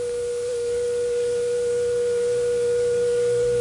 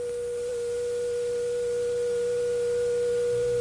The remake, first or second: first